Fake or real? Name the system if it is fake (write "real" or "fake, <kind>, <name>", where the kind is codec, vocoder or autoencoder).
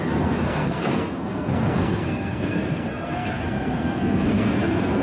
fake, codec, SNAC